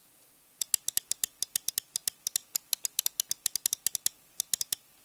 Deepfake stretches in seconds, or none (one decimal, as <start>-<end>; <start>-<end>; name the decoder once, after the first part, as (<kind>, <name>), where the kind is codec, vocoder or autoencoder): 0.0-0.7 (vocoder, Vocos)